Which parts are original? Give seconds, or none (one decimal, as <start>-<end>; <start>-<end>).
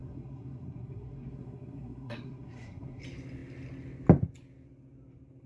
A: 3.0-5.5